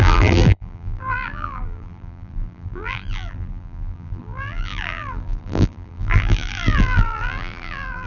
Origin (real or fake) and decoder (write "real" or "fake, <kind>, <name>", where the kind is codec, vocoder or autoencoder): fake, vocoder, BigVGAN v2